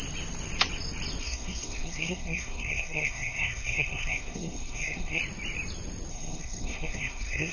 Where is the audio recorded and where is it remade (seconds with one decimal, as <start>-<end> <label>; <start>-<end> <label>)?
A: 0.0-1.2 recorded; 1.2-5.2 remade; 5.2-6.1 recorded; 6.1-7.5 remade

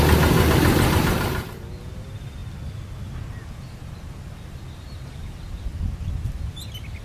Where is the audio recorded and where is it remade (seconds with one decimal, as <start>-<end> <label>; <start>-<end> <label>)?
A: 0.0-7.0 recorded

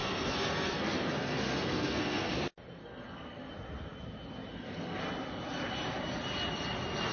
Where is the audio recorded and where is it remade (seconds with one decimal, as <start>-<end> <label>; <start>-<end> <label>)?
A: 0.0-2.3 remade; 2.3-2.8 recorded; 2.8-3.5 remade; 3.5-4.5 recorded; 4.5-5.0 remade; 5.0-7.1 recorded

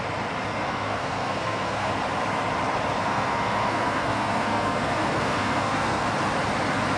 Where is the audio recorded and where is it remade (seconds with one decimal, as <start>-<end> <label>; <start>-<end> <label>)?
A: 0.0-0.5 recorded; 0.5-1.9 remade; 1.9-3.0 recorded; 3.0-6.1 remade; 6.1-7.0 recorded